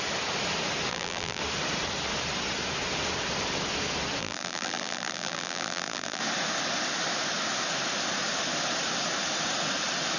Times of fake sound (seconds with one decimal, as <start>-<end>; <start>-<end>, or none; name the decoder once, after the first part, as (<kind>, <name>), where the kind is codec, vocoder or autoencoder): 0.9-1.4 (vocoder, BigVGAN v2); 4.2-6.2